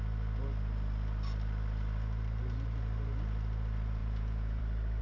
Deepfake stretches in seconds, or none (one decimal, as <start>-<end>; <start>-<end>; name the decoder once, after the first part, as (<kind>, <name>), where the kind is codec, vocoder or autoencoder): 4.0-4.6 (vocoder, Vocos)